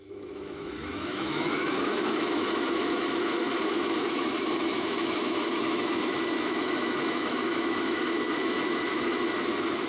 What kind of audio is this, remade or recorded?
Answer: remade